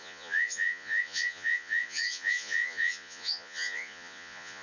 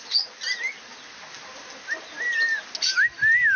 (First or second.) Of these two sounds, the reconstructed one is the first